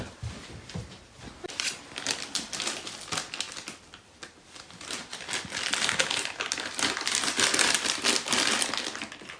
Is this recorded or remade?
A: recorded